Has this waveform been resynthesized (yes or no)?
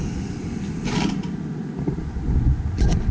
no